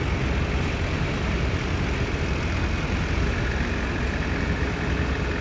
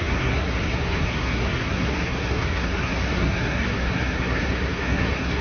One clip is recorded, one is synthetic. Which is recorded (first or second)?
first